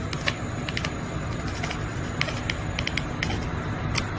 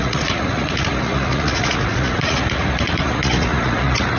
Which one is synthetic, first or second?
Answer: second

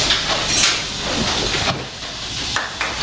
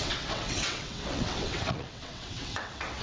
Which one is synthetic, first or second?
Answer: second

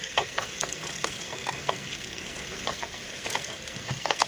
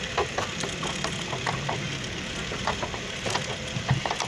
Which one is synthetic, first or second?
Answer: first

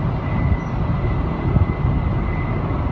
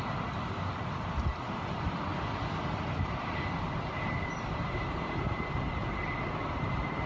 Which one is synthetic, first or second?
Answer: second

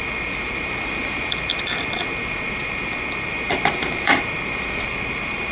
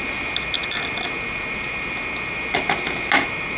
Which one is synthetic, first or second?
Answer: first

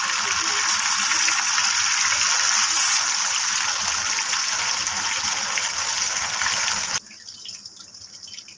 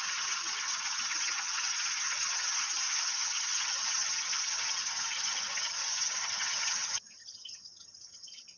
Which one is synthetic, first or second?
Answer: second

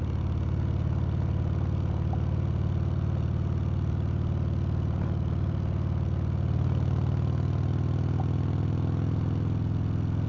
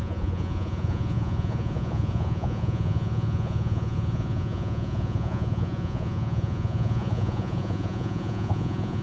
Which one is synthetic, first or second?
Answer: second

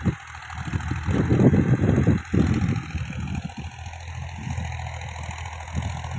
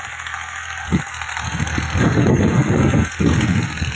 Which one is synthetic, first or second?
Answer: second